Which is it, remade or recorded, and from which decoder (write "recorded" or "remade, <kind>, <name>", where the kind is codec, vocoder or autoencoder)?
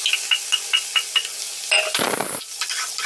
recorded